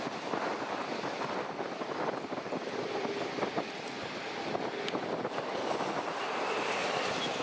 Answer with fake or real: fake